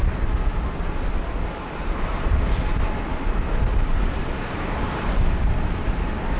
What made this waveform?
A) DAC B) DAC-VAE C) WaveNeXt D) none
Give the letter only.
D